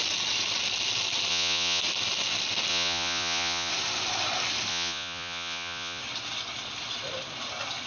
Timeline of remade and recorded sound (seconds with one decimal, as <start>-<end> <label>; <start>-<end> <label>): 0.0-1.3 recorded; 1.3-1.8 remade; 1.8-2.7 recorded; 2.7-3.7 remade; 3.7-4.7 recorded; 4.7-6.0 remade; 6.0-7.9 recorded

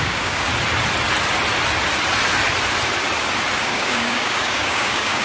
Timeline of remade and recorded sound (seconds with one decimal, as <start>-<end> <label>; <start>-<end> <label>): 0.0-0.5 remade; 0.5-3.6 recorded; 3.6-5.2 remade

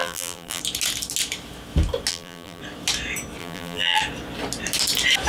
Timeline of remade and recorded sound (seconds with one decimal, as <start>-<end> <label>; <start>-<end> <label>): 0.0-0.6 remade; 0.6-2.1 recorded; 2.1-2.6 remade; 2.6-3.4 recorded; 3.4-4.0 remade; 4.0-5.3 recorded

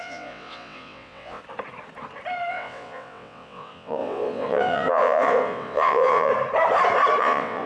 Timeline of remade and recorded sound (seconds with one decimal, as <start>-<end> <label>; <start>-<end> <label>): 0.0-1.4 remade; 1.4-2.5 recorded; 2.5-6.3 remade; 6.3-7.2 recorded; 7.2-7.7 remade

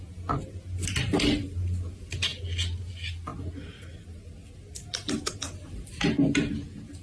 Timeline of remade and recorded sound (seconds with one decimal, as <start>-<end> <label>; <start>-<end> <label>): 0.0-1.0 recorded; 1.0-1.6 remade; 1.6-5.0 recorded; 5.0-6.0 remade; 6.0-7.0 recorded

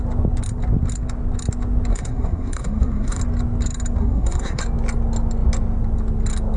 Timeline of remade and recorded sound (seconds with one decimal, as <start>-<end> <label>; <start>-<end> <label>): 0.0-1.9 recorded; 1.9-3.2 remade; 3.2-4.0 recorded; 4.0-4.6 remade; 4.6-6.6 recorded

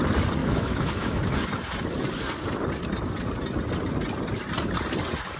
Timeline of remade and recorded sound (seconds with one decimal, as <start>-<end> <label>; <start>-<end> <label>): 0.0-0.4 recorded; 0.4-1.2 remade; 1.2-5.4 recorded